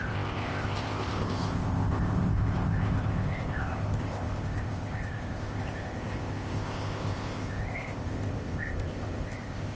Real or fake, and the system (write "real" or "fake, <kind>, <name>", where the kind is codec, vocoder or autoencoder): fake, codec, ZipCodec